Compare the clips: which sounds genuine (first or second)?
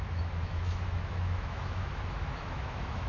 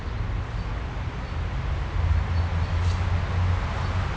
second